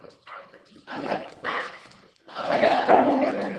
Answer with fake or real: fake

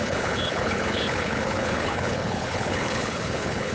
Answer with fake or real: fake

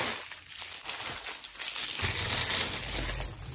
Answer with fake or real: real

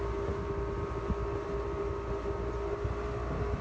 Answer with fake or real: real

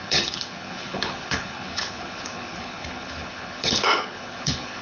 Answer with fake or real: fake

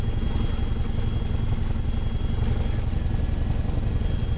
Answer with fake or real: real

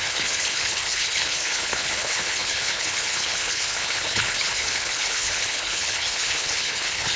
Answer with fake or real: fake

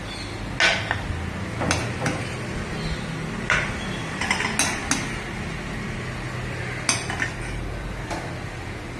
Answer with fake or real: real